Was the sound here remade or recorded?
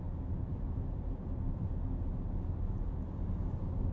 recorded